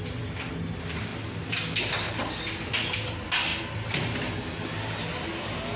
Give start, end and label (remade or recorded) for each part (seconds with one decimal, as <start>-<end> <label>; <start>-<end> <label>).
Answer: 0.0-5.8 recorded